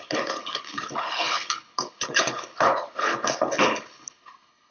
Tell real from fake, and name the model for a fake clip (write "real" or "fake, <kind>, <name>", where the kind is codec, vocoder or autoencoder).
fake, codec, HILCodec